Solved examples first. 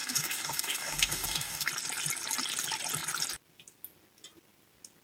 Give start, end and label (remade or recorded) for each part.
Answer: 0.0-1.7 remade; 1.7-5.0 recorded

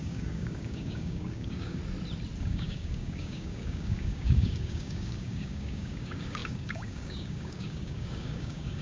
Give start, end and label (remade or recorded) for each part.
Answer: 0.0-1.8 remade; 1.8-2.4 recorded; 2.4-8.8 remade